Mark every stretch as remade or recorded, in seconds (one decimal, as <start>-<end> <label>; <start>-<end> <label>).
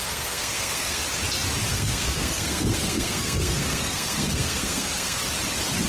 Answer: 0.0-1.0 remade; 1.0-1.7 recorded; 1.7-5.2 remade; 5.2-5.9 recorded